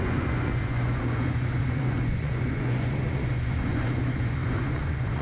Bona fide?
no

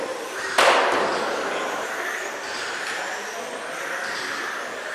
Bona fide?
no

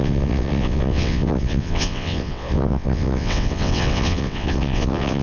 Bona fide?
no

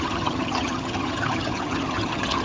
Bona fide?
no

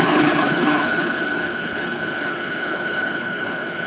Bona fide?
no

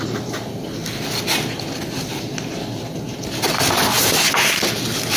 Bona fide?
yes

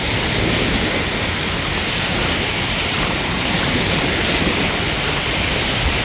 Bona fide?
yes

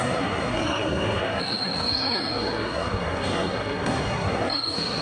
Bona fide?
no